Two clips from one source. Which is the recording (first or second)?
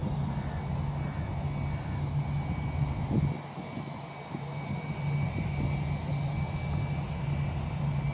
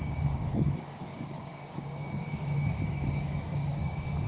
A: first